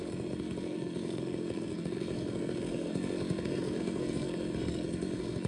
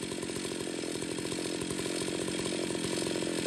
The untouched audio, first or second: second